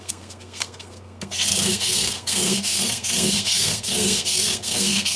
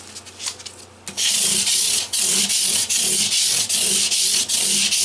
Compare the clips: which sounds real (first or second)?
second